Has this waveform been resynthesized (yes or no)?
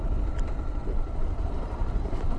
no